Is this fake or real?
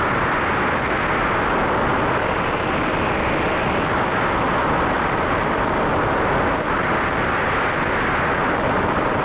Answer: real